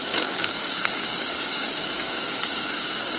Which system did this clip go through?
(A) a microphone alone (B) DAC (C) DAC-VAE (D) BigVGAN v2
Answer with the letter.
B